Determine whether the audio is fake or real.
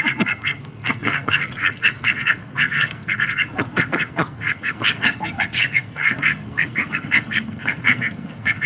fake